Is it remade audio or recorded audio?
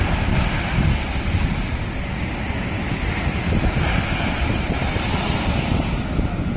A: recorded